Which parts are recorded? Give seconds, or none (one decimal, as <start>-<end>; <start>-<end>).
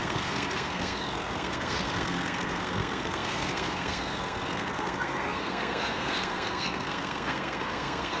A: none